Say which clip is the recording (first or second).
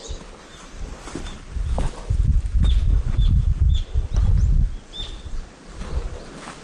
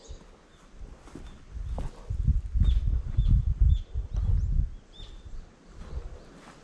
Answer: second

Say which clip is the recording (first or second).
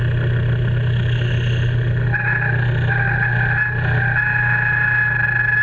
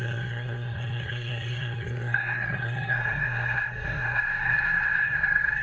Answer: first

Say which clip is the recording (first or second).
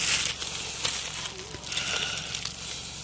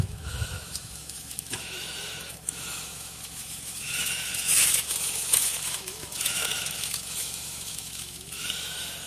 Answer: first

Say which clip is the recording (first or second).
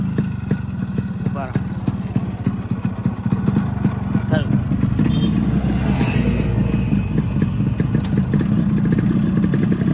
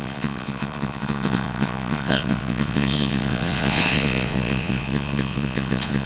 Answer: first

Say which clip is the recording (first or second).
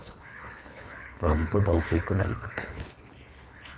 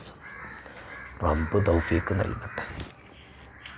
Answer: second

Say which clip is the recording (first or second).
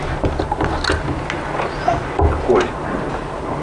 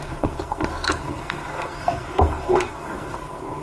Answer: first